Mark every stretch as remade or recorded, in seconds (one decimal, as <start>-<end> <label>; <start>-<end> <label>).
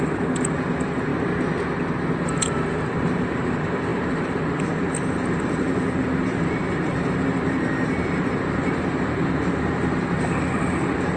0.0-1.1 remade; 1.1-2.2 recorded; 2.2-11.2 remade